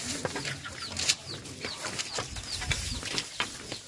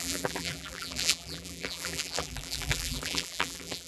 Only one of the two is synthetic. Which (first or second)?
second